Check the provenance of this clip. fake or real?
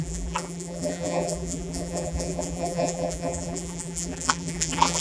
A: fake